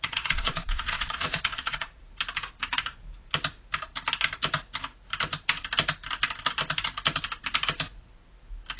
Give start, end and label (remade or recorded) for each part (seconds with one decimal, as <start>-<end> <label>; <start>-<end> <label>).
0.0-2.0 remade; 2.0-8.8 recorded